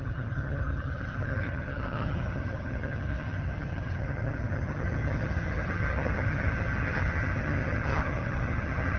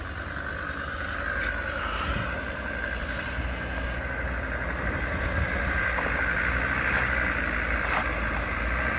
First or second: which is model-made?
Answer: first